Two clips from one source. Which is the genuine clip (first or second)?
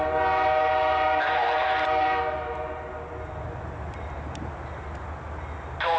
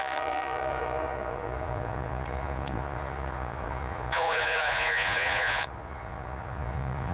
first